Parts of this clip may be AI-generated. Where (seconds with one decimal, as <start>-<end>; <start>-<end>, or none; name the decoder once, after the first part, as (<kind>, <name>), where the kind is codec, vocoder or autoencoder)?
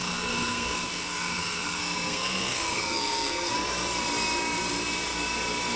0.0-3.5 (codec, SNAC)